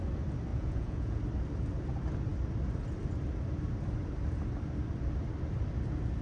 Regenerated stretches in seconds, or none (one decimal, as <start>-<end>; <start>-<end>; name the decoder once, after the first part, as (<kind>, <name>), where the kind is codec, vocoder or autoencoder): 0.5-1.2 (vocoder, Vocos)